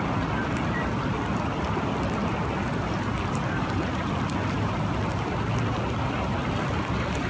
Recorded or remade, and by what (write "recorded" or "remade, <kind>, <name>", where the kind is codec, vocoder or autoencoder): recorded